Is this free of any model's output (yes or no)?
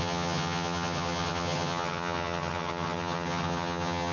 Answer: no